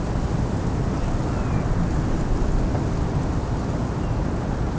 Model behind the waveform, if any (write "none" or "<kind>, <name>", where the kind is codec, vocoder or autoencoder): none